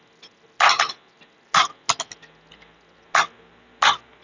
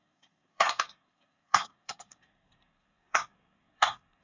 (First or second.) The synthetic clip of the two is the second